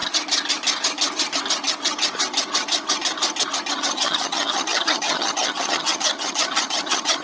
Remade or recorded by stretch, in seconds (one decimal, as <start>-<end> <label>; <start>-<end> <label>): 0.0-3.7 recorded; 3.7-7.2 remade